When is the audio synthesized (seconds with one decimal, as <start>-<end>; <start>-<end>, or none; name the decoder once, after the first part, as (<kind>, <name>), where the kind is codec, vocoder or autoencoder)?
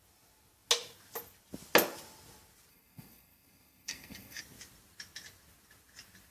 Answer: 2.7-4.4 (codec, SNAC)